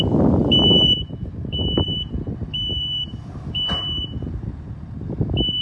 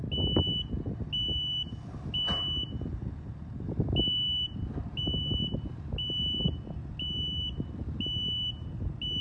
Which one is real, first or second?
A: second